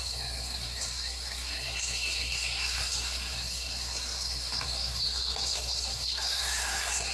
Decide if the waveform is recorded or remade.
remade